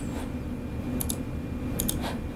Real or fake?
real